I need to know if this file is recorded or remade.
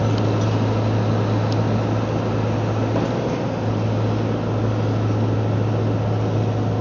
recorded